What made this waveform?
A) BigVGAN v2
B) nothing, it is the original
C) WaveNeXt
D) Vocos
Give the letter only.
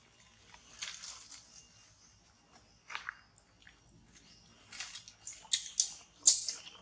B